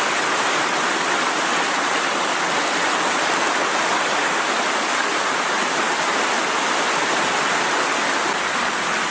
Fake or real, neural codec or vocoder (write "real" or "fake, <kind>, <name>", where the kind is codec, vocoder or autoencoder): real